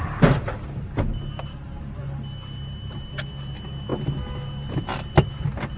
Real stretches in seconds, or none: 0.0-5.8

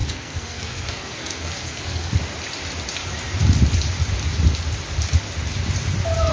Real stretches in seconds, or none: 2.2-6.3

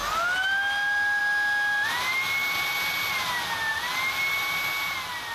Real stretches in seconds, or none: 0.0-5.3